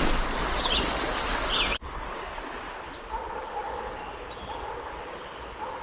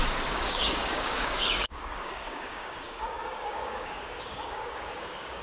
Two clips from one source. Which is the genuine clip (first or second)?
first